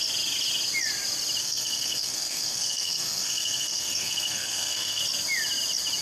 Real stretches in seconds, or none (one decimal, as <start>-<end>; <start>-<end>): 0.0-1.4; 5.0-6.0